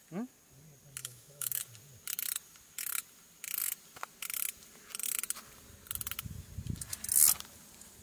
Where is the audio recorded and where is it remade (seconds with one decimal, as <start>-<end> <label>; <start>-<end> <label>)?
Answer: 0.0-1.0 recorded; 1.0-1.6 remade; 1.6-8.0 recorded